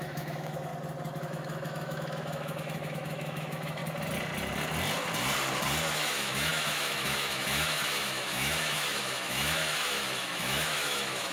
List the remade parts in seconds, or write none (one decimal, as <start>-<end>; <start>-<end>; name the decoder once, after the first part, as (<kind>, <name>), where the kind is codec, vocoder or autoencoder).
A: 0.0-0.7 (autoencoder, DAC-VAE); 1.2-3.8; 5.9-11.3